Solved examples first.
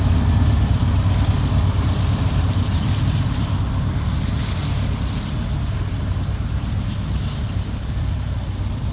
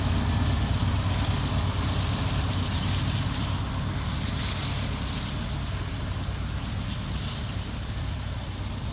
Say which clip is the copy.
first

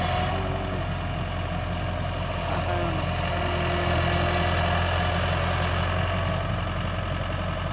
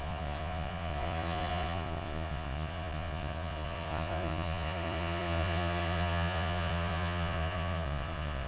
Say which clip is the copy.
second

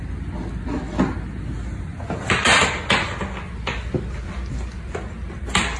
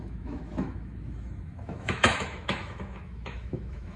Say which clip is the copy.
second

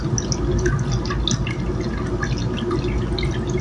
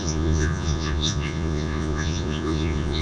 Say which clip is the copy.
second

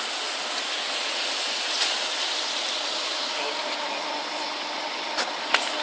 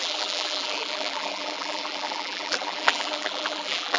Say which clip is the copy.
second